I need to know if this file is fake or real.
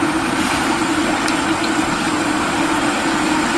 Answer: real